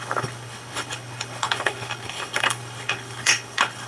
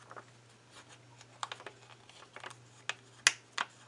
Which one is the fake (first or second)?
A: first